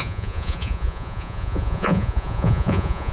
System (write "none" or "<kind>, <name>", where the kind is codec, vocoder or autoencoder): vocoder, Vocos